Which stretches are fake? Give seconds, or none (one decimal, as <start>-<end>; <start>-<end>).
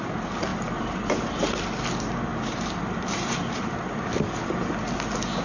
0.5-1.8; 2.3-4.4